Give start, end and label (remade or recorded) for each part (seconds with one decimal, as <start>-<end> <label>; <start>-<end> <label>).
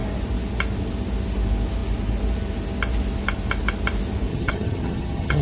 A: 0.0-4.3 recorded; 4.3-5.4 remade